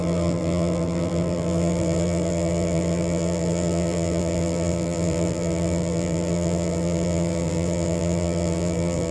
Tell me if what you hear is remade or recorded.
remade